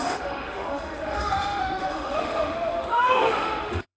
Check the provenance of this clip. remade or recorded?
remade